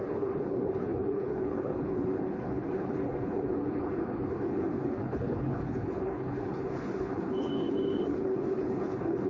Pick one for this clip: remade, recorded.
remade